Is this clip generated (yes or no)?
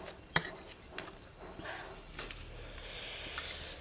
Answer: no